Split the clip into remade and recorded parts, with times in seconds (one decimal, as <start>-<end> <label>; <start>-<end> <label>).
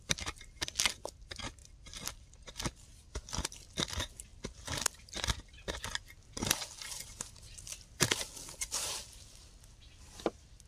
0.0-4.3 recorded; 4.3-5.8 remade; 5.8-10.7 recorded